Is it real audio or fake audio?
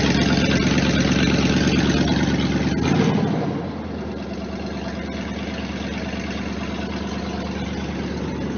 real